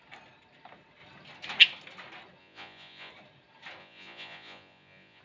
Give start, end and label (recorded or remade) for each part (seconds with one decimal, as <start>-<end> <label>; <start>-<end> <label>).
0.0-2.4 recorded; 2.4-3.1 remade; 3.1-3.8 recorded; 3.8-5.2 remade